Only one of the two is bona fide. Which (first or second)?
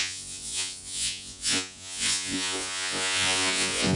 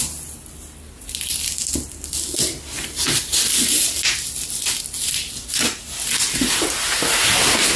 second